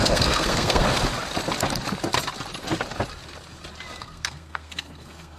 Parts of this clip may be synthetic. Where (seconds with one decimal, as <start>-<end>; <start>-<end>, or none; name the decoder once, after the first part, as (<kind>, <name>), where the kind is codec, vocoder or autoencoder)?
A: 0.0-0.8 (codec, SNAC); 4.0-5.4